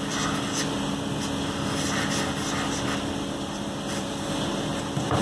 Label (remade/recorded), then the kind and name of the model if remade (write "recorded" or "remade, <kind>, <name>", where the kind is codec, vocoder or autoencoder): recorded